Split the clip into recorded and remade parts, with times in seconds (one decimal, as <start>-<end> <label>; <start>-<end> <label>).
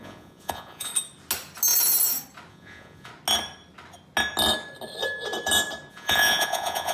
0.0-0.9 remade; 0.9-2.5 recorded; 2.5-3.1 remade; 3.1-5.9 recorded; 5.9-6.9 remade